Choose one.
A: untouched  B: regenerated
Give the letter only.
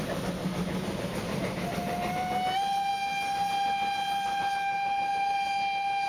A